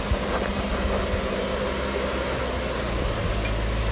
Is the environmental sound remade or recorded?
recorded